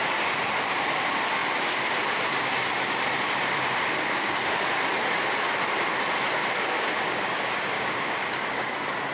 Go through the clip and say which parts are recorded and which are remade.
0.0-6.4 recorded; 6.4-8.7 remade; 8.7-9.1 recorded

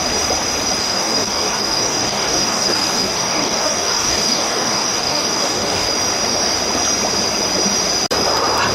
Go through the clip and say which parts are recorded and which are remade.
0.0-0.8 recorded; 0.8-5.9 remade; 5.9-8.7 recorded